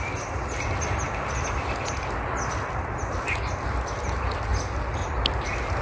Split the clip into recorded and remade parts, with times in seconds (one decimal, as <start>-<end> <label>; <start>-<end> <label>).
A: 0.0-5.8 recorded